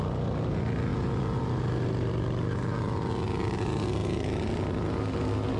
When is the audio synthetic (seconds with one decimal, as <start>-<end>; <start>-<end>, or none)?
none